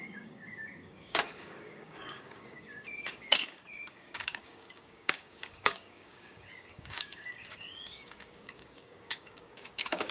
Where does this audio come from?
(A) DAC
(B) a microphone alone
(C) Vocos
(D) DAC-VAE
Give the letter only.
A